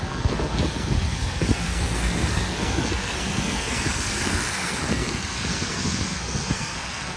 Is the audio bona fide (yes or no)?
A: no